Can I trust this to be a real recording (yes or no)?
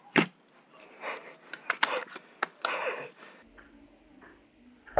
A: yes